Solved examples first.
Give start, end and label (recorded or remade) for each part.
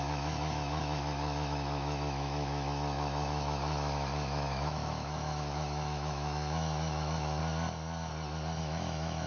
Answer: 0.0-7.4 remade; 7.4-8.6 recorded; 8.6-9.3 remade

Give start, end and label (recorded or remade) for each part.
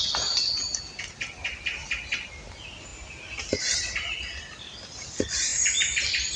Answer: 0.0-6.4 recorded